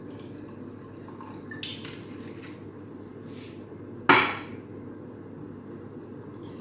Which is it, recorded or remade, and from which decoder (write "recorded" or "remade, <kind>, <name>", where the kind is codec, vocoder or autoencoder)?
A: recorded